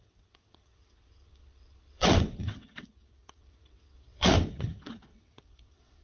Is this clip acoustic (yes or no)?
no